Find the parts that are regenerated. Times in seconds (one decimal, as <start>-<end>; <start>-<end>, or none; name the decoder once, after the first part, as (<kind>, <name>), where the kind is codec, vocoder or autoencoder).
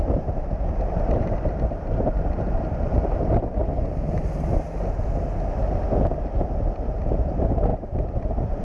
0.0-3.6 (vocoder, BigVGAN v2); 6.9-8.6